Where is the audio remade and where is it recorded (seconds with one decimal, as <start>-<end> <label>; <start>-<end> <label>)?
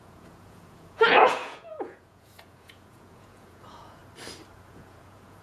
0.0-4.0 remade; 4.0-4.7 recorded; 4.7-5.4 remade